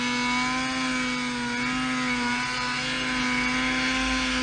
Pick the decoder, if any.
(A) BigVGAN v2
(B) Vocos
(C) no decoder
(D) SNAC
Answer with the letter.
C